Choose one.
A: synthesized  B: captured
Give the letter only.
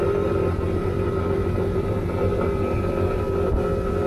A